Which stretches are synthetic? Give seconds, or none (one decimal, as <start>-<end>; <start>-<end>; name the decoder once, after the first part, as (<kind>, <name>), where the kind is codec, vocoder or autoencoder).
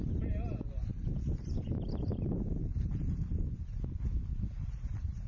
2.6-3.6 (vocoder, BigVGAN v2); 4.3-5.3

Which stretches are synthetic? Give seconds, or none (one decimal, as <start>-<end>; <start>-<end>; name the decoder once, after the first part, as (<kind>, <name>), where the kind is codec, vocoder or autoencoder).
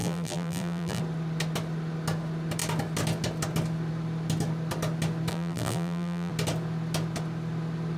0.0-1.0 (vocoder, BigVGAN v2); 5.3-6.3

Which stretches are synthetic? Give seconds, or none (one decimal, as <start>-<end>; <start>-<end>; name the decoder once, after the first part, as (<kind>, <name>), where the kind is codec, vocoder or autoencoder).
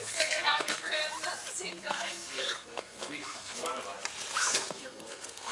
0.0-1.0 (codec, SNAC); 1.7-3.7; 4.4-5.5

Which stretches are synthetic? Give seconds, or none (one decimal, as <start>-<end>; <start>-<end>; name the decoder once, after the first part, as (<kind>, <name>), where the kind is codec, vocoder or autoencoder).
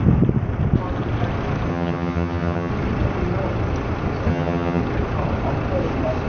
1.7-2.7 (vocoder, HiFi-GAN); 4.3-4.8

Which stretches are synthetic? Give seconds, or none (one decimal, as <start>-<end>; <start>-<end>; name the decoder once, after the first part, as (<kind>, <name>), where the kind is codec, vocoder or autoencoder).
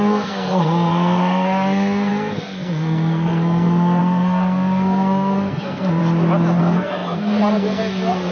0.0-6.0 (codec, SNAC); 6.6-8.3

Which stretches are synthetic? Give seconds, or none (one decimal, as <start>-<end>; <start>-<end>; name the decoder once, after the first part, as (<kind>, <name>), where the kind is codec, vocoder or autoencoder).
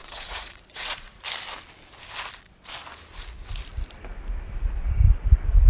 0.0-1.2 (vocoder, Vocos)